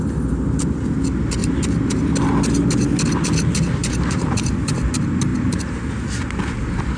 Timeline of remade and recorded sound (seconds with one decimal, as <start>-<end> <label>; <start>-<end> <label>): 0.0-1.4 recorded; 1.4-2.0 remade; 2.0-3.8 recorded; 3.8-4.4 remade; 4.4-5.3 recorded; 5.3-5.9 remade; 5.9-7.0 recorded